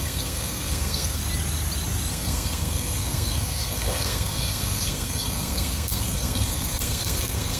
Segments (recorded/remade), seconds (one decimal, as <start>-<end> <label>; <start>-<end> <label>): 0.0-1.2 remade; 1.2-2.1 recorded; 2.1-7.6 remade